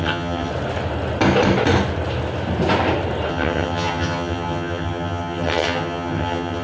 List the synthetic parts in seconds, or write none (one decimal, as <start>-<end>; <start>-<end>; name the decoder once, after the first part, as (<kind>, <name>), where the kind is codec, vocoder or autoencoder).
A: 0.0-0.5 (vocoder, HiFi-GAN); 3.3-6.6